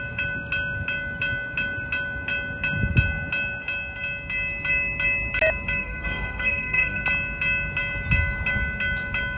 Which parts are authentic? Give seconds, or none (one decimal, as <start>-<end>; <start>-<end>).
0.0-5.8; 7.0-9.4